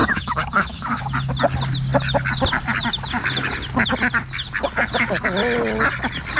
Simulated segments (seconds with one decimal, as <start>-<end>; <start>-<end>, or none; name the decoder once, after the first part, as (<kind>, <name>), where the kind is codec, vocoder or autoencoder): 0.0-1.0 (autoencoder, DAC-VAE)